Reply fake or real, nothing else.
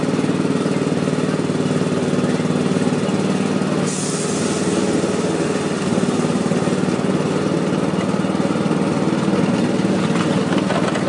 real